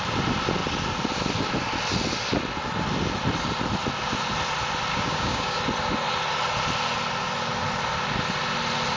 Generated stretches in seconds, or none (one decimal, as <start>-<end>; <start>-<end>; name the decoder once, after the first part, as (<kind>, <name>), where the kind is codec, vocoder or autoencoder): 4.9-5.6 (codec, DAC)